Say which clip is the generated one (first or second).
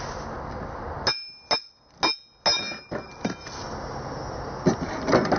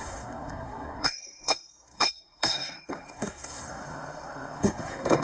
second